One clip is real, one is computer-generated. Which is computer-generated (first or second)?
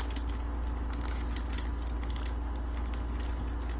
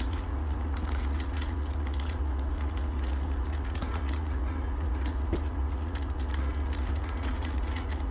second